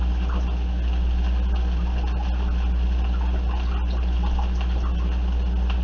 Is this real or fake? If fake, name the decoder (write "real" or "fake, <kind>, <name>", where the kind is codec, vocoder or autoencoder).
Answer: real